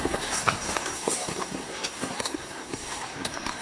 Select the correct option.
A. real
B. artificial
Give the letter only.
B